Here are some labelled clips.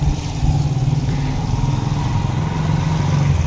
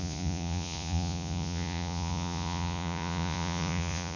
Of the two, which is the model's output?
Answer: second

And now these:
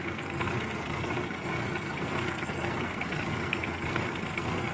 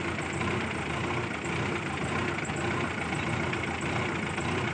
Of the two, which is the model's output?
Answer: first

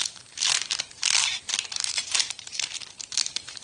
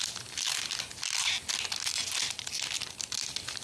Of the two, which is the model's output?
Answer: first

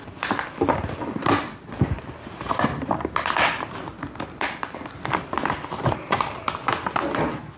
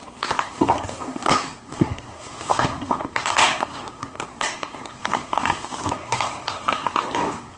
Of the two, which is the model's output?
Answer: second